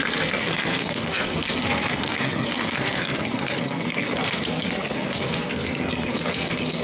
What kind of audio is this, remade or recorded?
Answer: remade